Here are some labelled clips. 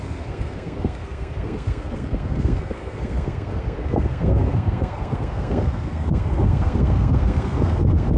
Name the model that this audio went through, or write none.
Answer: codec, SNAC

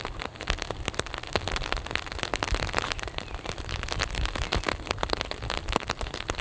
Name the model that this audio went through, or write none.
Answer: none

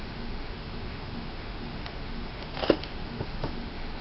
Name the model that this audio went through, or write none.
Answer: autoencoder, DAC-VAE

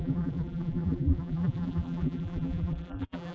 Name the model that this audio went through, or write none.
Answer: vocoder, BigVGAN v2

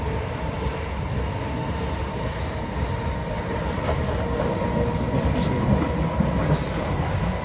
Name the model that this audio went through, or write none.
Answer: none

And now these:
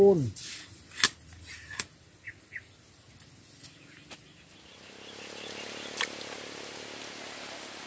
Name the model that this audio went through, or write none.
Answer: none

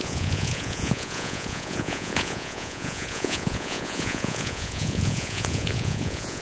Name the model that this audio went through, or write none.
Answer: vocoder, Vocos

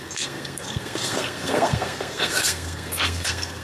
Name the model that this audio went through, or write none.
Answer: codec, SNAC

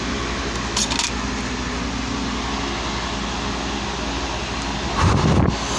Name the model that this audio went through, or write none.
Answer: none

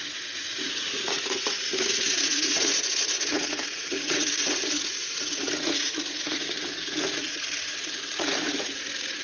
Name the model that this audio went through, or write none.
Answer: vocoder, Vocos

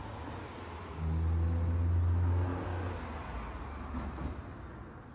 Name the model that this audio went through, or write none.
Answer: none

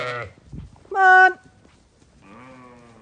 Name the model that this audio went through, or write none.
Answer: none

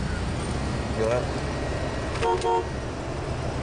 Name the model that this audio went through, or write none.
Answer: none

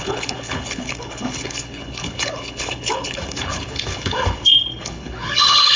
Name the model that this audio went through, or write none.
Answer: codec, HILCodec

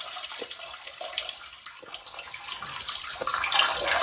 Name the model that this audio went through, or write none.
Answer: none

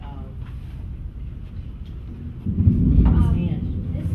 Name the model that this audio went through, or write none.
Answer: none